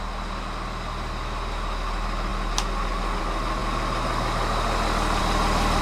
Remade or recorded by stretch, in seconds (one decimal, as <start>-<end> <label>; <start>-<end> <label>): 0.0-5.8 recorded